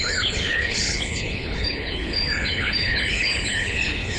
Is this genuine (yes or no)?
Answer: no